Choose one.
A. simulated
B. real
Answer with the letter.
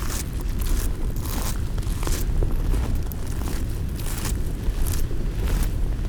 B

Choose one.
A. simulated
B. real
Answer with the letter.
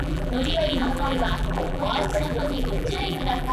A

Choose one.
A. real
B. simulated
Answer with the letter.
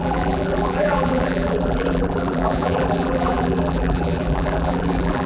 B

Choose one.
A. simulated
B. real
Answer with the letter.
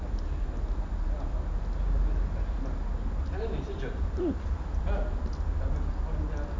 B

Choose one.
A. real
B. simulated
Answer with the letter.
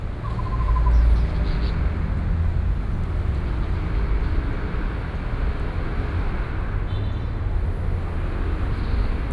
A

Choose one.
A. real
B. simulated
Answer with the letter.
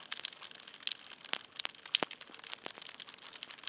A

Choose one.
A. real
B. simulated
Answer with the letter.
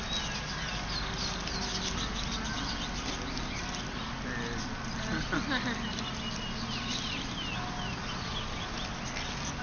A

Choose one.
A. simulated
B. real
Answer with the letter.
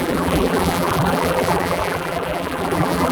A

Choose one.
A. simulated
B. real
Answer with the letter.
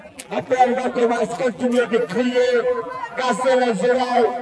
A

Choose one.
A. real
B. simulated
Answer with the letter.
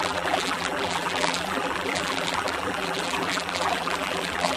B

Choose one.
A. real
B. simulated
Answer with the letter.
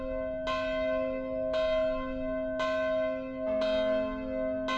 A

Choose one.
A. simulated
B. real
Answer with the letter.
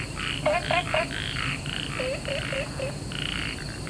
B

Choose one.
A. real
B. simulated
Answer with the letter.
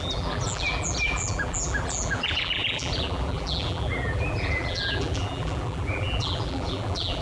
B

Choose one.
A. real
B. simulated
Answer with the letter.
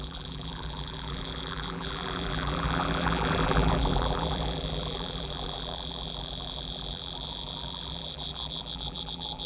B